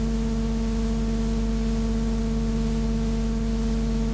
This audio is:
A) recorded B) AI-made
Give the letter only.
A